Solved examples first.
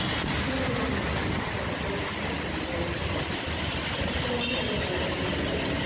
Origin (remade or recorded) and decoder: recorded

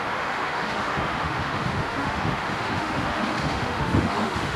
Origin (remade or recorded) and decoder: remade, autoencoder, DAC-VAE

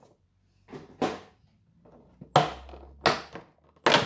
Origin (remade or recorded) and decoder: recorded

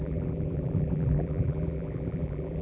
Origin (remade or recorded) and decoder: remade, vocoder, BigVGAN v2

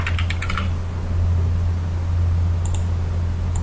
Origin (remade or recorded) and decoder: recorded